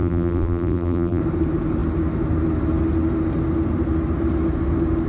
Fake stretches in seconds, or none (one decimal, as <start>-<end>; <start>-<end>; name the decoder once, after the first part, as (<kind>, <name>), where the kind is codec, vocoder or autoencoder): 0.0-1.2 (vocoder, BigVGAN v2)

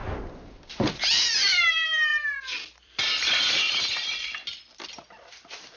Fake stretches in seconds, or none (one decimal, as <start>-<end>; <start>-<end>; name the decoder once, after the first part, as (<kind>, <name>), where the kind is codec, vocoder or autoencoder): 0.9-5.8 (vocoder, BigVGAN v2)

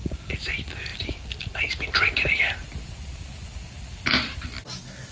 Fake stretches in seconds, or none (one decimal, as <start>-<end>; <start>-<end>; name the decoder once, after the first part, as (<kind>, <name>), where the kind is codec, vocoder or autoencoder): 0.9-1.6 (vocoder, BigVGAN v2)

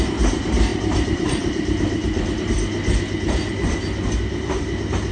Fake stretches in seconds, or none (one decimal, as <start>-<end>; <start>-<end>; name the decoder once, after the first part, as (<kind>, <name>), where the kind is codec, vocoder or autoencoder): 0.7-2.4 (vocoder, BigVGAN v2)

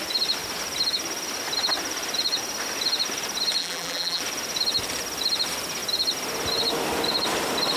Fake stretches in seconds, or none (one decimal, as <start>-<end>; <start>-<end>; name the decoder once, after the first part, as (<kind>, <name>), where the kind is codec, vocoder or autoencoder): 3.6-4.2 (vocoder, BigVGAN v2)

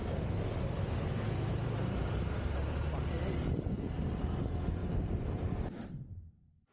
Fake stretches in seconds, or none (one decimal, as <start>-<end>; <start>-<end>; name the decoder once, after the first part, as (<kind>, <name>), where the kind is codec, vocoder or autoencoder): 0.0-2.0 (vocoder, BigVGAN v2); 4.8-5.7

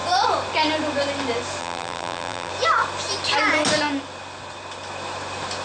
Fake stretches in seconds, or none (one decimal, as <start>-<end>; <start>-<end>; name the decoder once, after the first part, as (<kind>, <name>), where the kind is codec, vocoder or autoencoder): 1.6-2.5 (vocoder, BigVGAN v2)

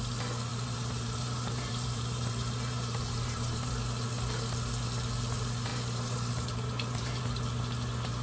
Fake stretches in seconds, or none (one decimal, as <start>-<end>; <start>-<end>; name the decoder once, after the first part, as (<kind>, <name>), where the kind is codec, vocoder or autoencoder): 0.5-3.7 (vocoder, BigVGAN v2); 5.7-7.2